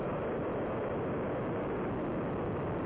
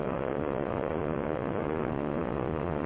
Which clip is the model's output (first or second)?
second